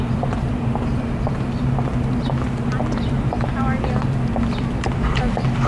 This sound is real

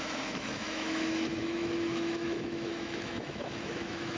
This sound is fake